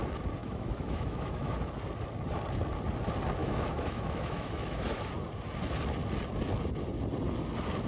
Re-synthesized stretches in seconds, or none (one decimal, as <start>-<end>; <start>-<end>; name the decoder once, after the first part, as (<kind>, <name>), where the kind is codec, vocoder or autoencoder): 0.4-1.7 (autoencoder, DAC-VAE); 3.4-5.1